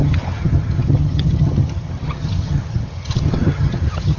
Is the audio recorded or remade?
remade